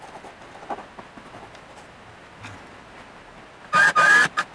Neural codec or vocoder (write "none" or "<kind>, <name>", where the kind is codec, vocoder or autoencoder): none